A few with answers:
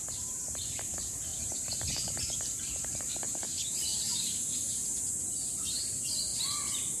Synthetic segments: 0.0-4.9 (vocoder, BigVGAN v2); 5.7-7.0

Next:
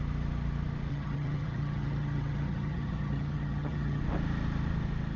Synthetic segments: 0.9-4.0 (vocoder, HiFi-GAN)

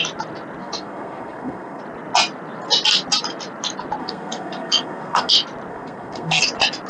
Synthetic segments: 0.6-1.8 (codec, SNAC); 4.0-5.3; 5.7-6.4

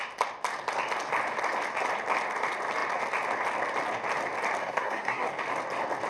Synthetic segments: 4.6-5.3 (codec, SNAC)

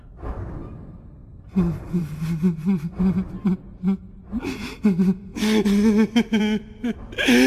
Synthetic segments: none

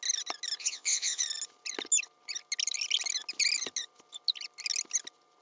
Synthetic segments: 0.6-1.2 (vocoder, Vocos)